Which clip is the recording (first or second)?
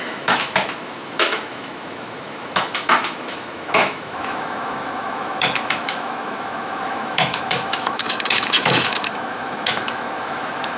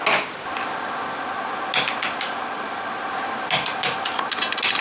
second